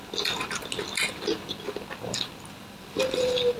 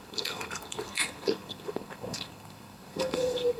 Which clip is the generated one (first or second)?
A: second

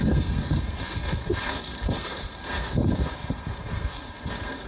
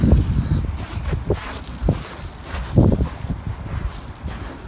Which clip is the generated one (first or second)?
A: first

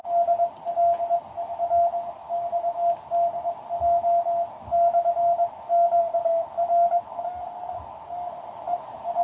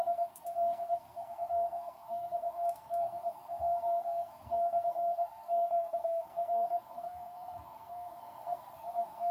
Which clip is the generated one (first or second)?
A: second